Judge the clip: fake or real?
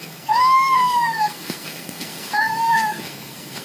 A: fake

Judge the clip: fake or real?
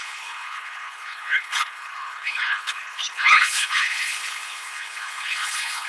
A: fake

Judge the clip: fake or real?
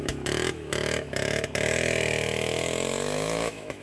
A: fake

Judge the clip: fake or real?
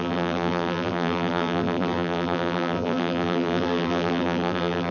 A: fake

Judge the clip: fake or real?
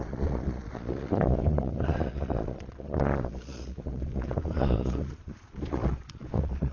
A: fake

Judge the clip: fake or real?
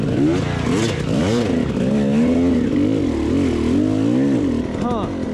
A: real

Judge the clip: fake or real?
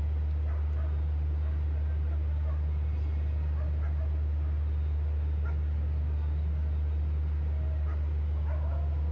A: real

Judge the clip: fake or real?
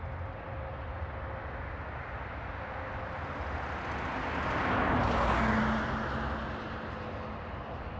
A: real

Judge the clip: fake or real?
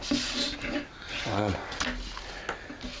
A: real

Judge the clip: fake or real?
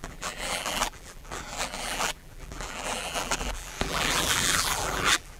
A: fake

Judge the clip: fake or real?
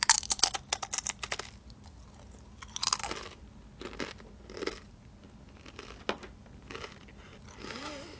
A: real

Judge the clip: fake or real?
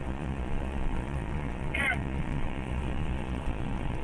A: fake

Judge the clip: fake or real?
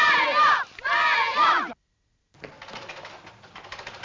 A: real